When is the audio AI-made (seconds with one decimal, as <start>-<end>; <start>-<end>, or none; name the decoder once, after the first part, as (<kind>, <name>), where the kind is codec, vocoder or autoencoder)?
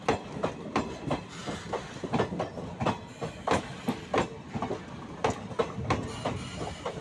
none